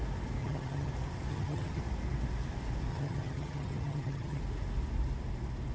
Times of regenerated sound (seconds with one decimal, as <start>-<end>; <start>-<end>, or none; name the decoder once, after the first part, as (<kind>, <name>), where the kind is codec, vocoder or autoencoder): 0.4-0.9 (vocoder, HiFi-GAN); 1.3-1.8; 2.9-4.4